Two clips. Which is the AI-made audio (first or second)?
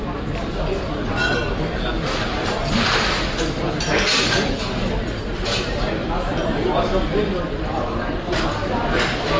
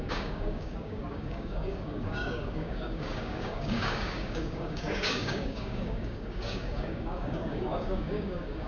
second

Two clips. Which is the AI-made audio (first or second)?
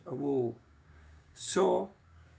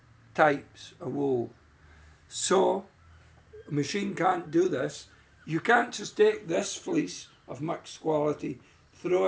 first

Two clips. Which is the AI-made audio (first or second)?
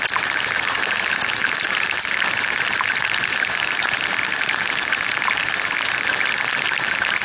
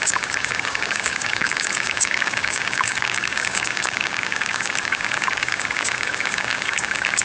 second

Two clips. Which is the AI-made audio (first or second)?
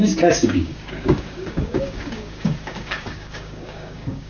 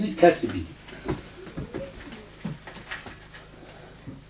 first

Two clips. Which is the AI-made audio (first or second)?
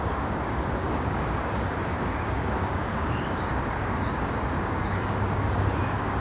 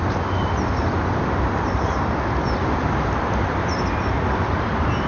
first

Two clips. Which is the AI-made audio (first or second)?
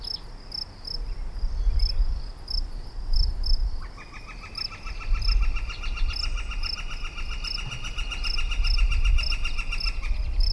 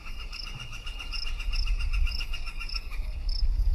second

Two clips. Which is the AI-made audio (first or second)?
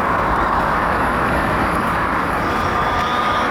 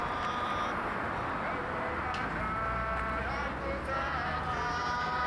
first